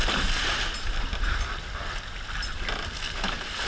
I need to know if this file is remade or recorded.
recorded